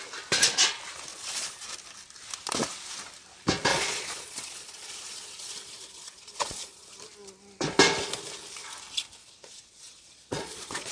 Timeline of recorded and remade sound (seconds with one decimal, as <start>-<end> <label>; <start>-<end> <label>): 0.0-1.1 recorded; 1.1-1.7 remade; 1.7-3.7 recorded; 3.7-6.9 remade; 6.9-9.2 recorded; 9.2-10.9 remade